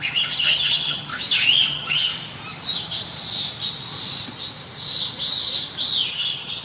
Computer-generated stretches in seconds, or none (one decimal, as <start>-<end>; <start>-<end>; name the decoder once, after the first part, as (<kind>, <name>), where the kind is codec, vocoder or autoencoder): 0.0-1.1 (vocoder, HiFi-GAN); 1.7-2.1; 6.1-6.6